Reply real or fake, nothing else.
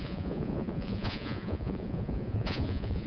fake